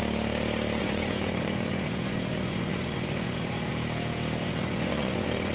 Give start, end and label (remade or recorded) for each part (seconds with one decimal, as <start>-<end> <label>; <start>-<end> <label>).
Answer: 0.0-0.8 recorded; 0.8-3.7 remade; 3.7-4.4 recorded; 4.4-5.5 remade